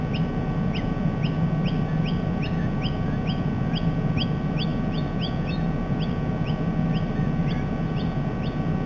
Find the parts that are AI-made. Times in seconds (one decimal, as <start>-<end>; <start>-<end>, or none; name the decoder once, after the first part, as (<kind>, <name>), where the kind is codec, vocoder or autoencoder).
none